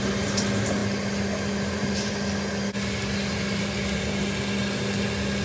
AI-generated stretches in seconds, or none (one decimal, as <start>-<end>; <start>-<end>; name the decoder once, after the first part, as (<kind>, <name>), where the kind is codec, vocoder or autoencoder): none